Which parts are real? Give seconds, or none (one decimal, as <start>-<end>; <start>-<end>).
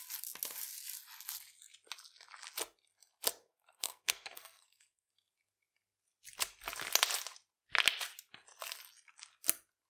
0.0-3.4; 5.1-9.9